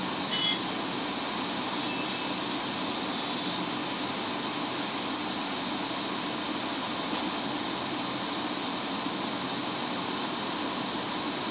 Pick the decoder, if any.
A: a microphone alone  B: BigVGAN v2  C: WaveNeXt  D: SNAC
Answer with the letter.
A